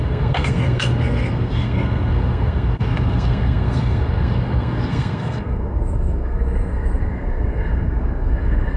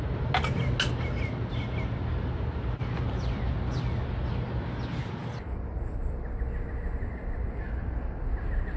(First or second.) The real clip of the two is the second